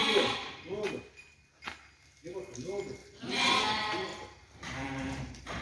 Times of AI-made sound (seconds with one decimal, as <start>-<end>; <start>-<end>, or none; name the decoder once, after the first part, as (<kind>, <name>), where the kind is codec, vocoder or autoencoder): 0.0-0.9 (vocoder, BigVGAN v2); 4.1-5.6